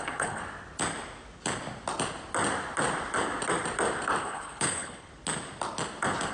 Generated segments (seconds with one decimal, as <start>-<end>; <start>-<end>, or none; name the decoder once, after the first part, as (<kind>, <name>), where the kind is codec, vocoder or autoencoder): 0.0-0.4 (codec, HILCodec); 4.2-5.1